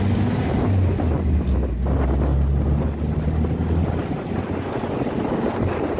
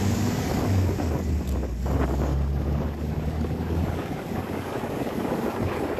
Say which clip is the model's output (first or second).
second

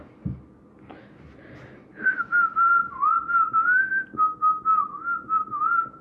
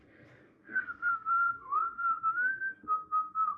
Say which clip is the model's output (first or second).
second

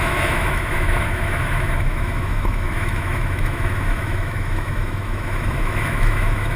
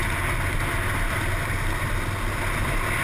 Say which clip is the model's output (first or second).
first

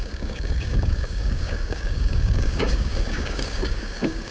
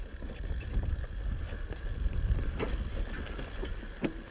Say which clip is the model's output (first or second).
first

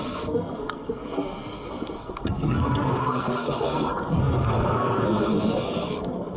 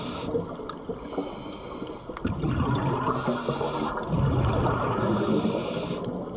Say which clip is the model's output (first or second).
first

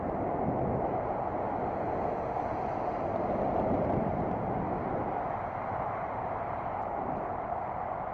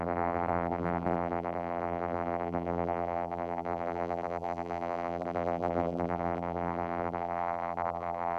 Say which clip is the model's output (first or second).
second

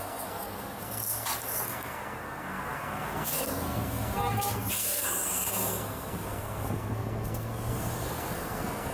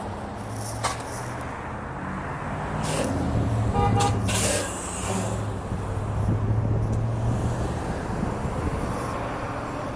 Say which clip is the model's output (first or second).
first